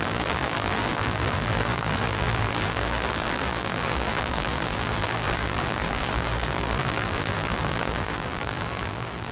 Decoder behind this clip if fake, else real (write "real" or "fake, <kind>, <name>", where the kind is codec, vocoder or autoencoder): fake, vocoder, BigVGAN v2